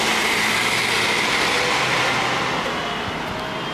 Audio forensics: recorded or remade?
recorded